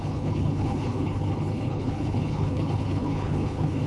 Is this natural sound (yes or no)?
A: no